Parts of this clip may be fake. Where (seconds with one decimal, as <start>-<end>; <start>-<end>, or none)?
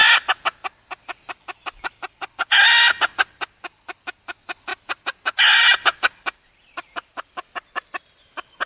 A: 1.0-2.7; 3.6-4.7; 5.7-8.7